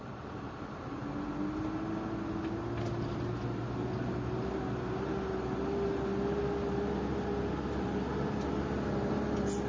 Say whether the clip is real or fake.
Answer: real